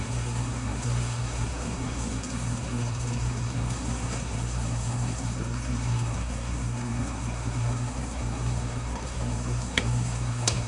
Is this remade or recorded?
remade